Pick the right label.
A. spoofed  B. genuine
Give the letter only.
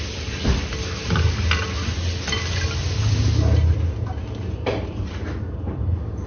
B